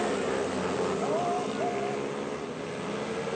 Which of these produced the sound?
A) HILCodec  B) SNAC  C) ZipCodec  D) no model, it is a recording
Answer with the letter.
D